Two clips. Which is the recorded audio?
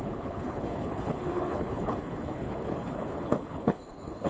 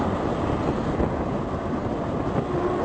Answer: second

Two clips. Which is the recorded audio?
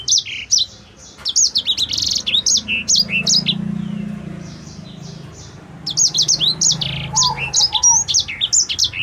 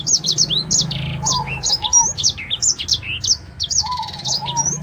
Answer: first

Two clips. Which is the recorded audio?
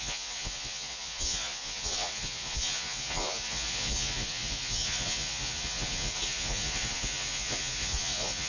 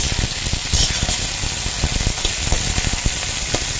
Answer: second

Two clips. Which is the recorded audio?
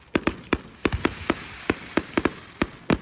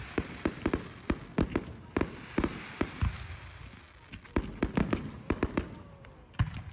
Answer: second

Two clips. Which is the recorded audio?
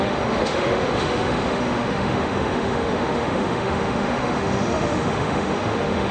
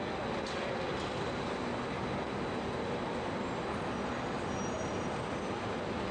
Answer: second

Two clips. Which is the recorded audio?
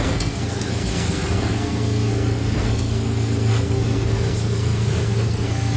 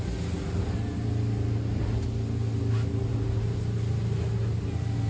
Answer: second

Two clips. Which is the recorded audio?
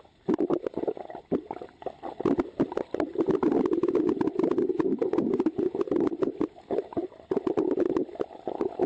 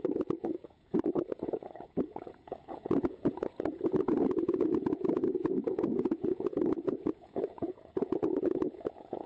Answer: first